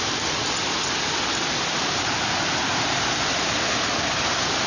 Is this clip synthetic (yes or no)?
no